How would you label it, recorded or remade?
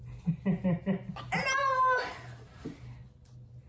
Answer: recorded